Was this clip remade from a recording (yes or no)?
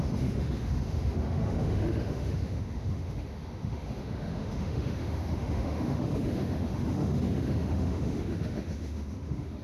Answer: yes